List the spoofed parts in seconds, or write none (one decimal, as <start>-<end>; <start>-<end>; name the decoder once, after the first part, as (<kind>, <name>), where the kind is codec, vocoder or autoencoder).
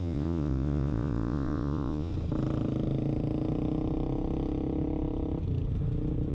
0.0-2.1 (vocoder, Vocos)